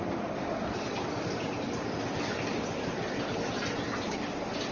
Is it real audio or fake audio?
real